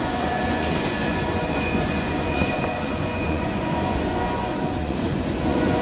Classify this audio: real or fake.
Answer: fake